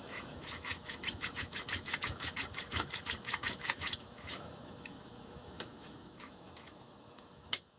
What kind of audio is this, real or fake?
fake